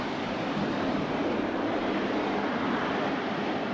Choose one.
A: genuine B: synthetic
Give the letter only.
A